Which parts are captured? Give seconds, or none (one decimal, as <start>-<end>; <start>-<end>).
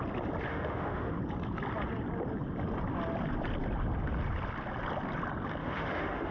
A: 0.0-0.5; 1.2-5.6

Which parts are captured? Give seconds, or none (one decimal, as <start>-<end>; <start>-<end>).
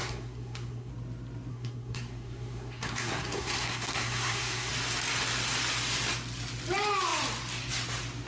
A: 0.9-1.5; 4.7-8.3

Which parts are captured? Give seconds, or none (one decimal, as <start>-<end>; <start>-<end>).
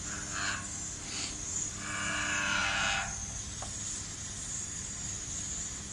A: 0.0-5.9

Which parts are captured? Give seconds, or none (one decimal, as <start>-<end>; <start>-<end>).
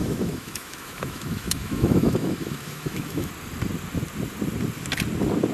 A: 3.3-5.5